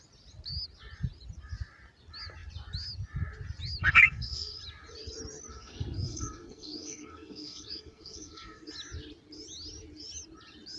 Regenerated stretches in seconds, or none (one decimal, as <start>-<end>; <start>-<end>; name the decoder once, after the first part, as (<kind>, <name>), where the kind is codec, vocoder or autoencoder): 3.8-4.6 (codec, SNAC); 5.5-8.7